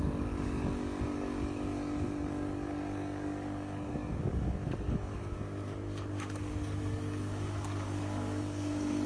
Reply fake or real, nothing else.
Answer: fake